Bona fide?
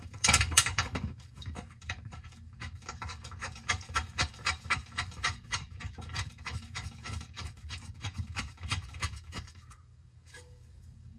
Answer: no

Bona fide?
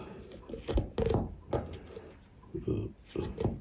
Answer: yes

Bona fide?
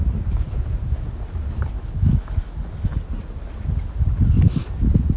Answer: yes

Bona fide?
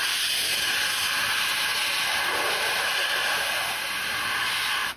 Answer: yes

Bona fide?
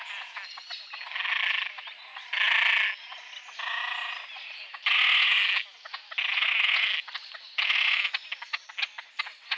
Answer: yes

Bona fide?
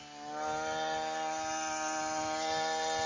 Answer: yes